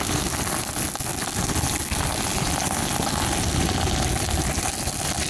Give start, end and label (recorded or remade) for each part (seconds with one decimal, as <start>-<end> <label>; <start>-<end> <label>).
0.0-5.3 recorded